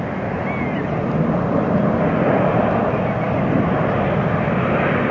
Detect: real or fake real